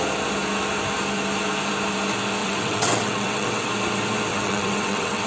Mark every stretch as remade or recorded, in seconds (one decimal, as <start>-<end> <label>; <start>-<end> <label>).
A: 0.0-2.4 recorded; 2.4-3.7 remade; 3.7-4.3 recorded; 4.3-5.3 remade